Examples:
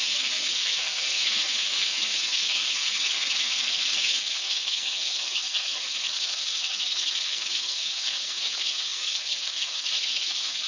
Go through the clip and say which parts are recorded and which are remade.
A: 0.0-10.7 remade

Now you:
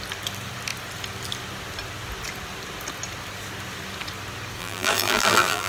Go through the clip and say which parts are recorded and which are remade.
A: 0.0-4.6 recorded; 4.6-5.7 remade

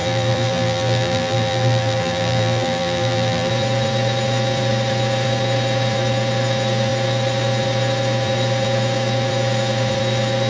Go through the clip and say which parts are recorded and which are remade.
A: 0.0-3.5 remade; 3.5-10.5 recorded

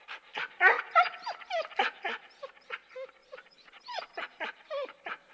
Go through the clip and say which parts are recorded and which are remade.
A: 0.0-3.2 recorded; 3.2-4.4 remade; 4.4-5.3 recorded

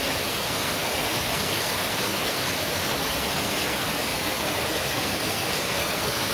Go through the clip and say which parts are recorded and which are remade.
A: 0.0-6.3 remade

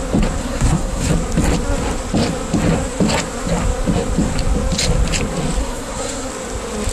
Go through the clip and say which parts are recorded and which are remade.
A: 0.0-0.4 recorded; 0.4-1.1 remade; 1.1-5.6 recorded; 5.6-6.3 remade; 6.3-6.9 recorded

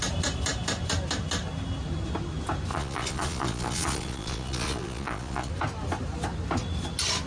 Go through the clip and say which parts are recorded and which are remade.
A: 0.0-2.7 recorded; 2.7-5.5 remade; 5.5-7.3 recorded